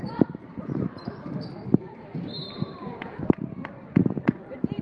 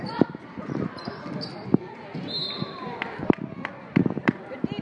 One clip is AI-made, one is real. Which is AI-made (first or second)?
first